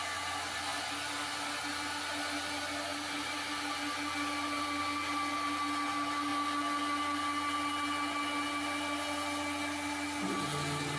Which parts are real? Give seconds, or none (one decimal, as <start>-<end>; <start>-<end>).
0.0-11.0